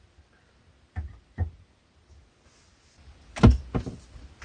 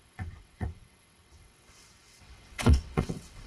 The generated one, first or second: second